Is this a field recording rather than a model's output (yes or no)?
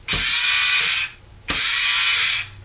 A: yes